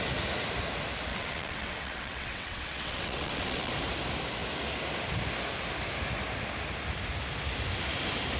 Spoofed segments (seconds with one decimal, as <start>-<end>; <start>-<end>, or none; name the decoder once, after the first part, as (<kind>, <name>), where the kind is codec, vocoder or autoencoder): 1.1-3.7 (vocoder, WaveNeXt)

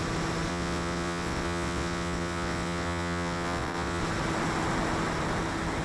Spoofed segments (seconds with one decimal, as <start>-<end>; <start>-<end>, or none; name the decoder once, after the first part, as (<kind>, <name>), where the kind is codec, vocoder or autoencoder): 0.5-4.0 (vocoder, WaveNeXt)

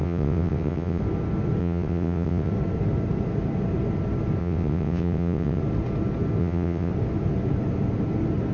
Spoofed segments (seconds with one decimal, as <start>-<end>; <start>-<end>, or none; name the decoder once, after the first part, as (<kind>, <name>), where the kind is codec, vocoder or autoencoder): 0.0-1.0 (vocoder, WaveNeXt); 1.6-2.5; 4.4-5.6; 6.4-6.9